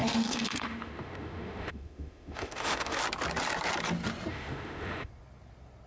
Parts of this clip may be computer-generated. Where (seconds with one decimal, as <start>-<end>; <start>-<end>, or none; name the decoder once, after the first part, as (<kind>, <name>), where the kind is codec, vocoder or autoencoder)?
0.0-3.0 (autoencoder, DAC-VAE); 4.3-5.1